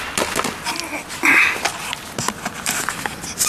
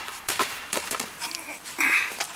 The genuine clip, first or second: first